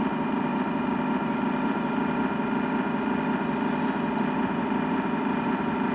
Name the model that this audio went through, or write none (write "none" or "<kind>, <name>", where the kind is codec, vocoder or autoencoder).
vocoder, BigVGAN v2